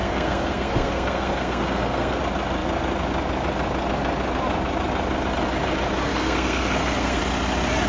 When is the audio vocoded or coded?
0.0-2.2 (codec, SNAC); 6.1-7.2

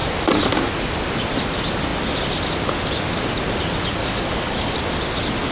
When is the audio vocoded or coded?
4.0-4.7 (codec, DAC)

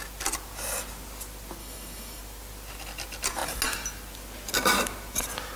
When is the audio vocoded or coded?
1.6-2.2 (autoencoder, DAC-VAE)

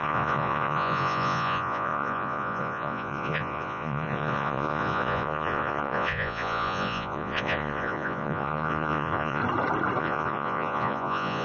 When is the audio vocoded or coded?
0.0-9.4 (vocoder, Vocos); 10.0-11.4

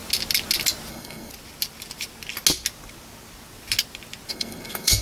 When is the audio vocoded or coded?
0.9-1.3 (codec, SNAC); 4.3-5.0

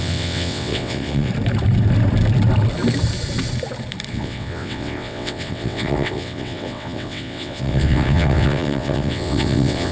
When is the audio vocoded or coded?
0.0-1.3 (vocoder, WaveNeXt); 4.1-9.9